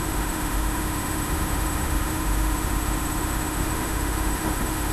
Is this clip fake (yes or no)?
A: yes